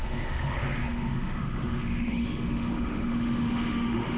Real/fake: fake